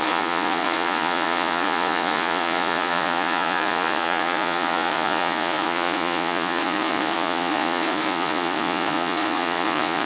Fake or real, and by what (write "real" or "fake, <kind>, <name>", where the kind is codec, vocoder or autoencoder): fake, vocoder, Vocos